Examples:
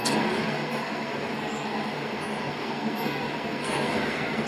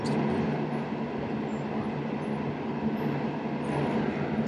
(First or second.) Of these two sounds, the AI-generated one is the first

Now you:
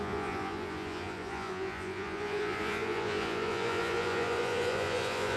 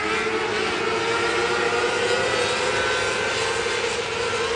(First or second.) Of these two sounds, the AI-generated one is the first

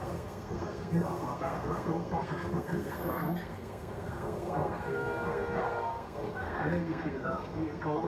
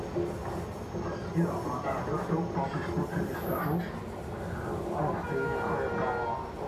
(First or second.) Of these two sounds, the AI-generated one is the first